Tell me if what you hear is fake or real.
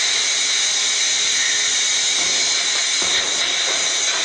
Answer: real